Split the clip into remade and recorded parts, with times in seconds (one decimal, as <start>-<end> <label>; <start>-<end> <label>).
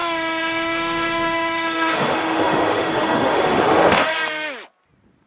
0.0-4.1 remade; 4.1-5.3 recorded